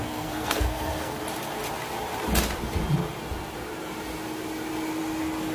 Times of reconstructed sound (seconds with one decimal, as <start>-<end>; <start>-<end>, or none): 0.0-1.2